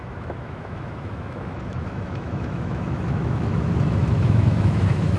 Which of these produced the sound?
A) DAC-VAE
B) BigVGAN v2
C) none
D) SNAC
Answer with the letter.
A